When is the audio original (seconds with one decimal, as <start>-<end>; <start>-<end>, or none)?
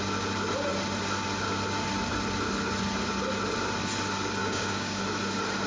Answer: 0.0-4.4; 5.0-5.7